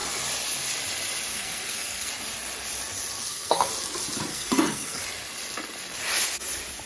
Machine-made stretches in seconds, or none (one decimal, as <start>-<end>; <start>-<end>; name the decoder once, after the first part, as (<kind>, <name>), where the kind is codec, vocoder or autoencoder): 1.3-2.1 (codec, SNAC); 3.2-3.7; 4.3-5.0